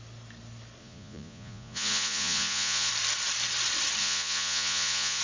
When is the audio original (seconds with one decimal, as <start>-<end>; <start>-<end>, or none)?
0.0-0.8; 2.9-4.0